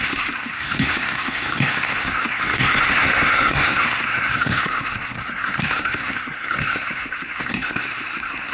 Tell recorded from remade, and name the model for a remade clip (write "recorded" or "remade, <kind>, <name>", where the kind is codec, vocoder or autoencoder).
remade, codec, SNAC